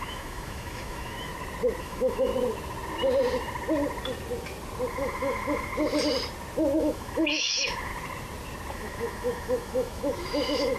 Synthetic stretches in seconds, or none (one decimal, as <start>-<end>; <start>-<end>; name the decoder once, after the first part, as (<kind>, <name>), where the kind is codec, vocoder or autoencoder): 0.0-1.3 (autoencoder, DAC-VAE); 1.8-2.3; 4.9-5.7; 6.8-7.9; 8.7-10.8